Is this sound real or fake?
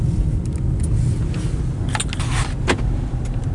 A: real